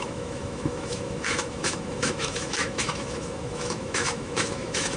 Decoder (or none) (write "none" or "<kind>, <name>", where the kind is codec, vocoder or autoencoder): autoencoder, DAC-VAE